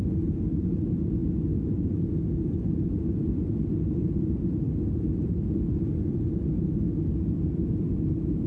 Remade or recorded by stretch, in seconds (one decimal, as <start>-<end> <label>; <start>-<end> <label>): 0.0-8.5 recorded